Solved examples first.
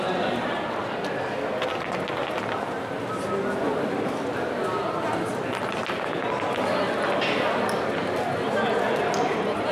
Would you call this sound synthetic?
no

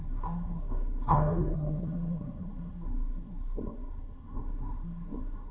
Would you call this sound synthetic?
yes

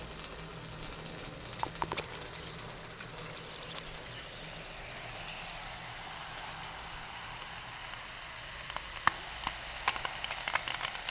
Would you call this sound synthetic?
no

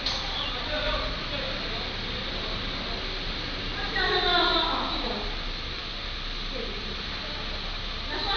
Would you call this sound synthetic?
no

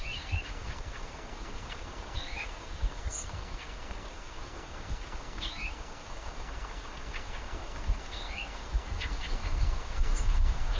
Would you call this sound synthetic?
yes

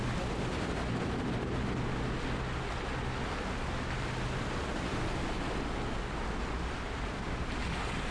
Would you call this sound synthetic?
no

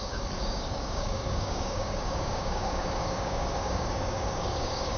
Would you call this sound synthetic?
yes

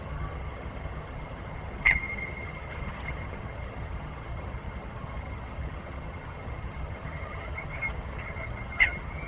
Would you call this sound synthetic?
yes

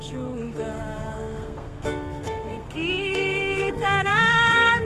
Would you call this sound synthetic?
yes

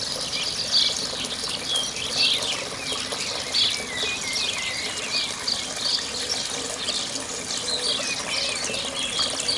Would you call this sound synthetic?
no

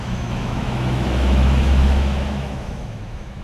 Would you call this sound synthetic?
yes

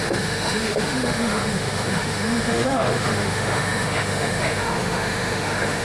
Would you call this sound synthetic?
yes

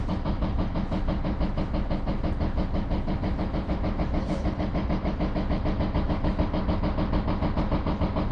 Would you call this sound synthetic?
yes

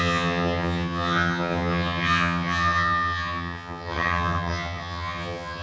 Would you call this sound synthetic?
yes